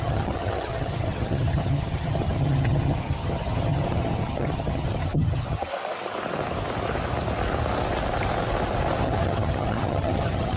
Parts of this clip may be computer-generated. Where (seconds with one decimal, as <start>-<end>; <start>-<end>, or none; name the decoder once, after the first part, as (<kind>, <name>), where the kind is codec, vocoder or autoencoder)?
0.0-5.7 (vocoder, HiFi-GAN); 9.0-10.6